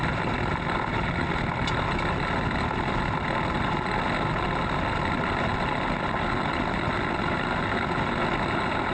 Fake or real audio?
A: real